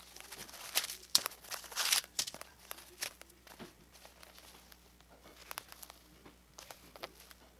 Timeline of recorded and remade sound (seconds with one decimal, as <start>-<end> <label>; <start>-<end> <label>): 0.0-0.4 recorded; 0.4-4.2 remade; 4.2-7.6 recorded